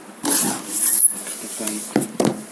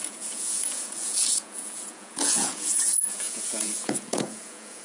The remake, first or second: second